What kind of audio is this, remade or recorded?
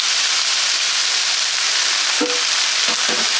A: recorded